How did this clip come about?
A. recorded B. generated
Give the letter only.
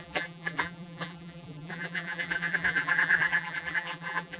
B